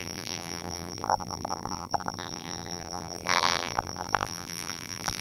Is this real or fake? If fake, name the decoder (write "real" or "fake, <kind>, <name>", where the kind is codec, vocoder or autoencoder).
fake, vocoder, BigVGAN v2